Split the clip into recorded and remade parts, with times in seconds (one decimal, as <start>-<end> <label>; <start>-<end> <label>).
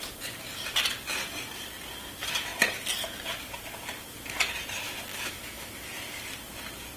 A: 0.0-5.1 recorded; 5.1-5.7 remade; 5.7-7.0 recorded